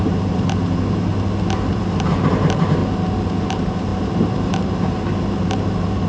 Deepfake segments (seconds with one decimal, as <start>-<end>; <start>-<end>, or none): 0.0-1.1; 1.7-2.8; 3.4-6.1